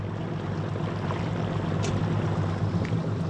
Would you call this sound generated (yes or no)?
no